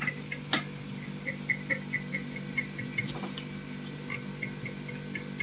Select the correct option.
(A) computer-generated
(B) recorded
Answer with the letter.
B